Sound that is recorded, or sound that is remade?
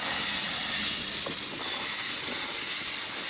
recorded